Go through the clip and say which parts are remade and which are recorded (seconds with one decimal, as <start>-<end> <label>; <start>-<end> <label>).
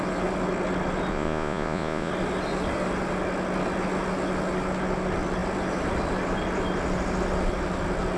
0.0-1.1 recorded; 1.1-2.1 remade; 2.1-8.2 recorded